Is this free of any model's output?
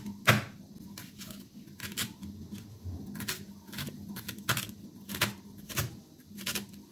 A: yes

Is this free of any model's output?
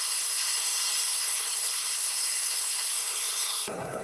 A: no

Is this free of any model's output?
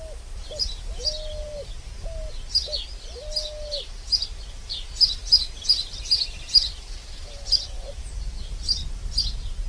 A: yes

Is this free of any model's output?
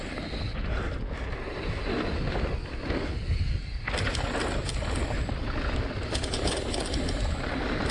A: yes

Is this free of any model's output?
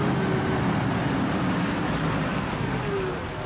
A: yes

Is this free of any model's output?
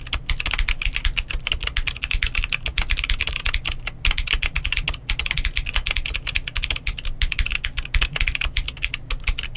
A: yes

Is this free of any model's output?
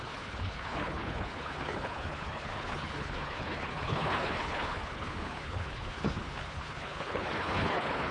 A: no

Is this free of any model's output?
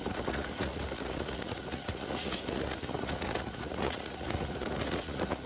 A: no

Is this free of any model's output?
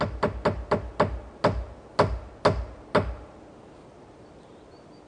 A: yes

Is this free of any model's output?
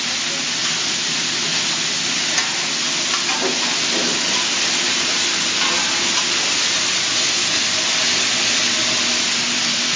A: yes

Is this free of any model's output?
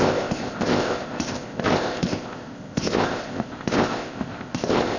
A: no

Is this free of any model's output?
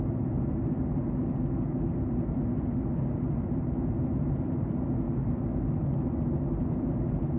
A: yes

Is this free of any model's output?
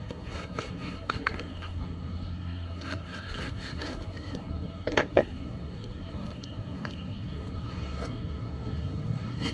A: no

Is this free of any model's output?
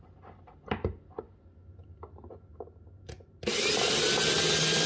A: yes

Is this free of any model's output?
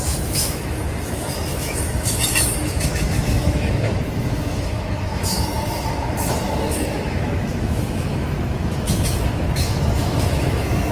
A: no